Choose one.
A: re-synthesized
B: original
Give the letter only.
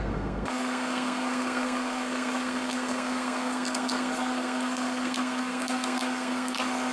A